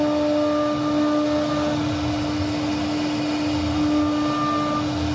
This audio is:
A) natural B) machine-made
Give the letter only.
A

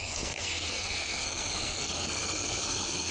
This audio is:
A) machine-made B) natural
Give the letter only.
A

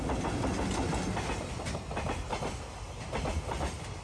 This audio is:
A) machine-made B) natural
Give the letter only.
B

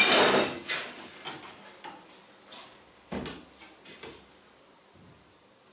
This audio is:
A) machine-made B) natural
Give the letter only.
B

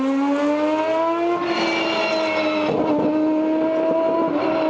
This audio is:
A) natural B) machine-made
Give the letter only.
A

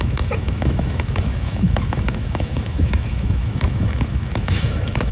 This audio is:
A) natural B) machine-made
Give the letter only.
B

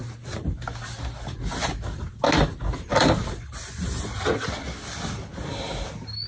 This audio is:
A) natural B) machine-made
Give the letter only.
A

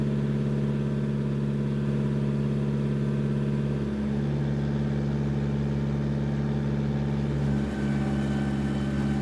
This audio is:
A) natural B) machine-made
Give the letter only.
A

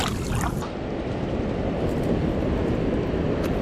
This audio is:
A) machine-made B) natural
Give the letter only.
B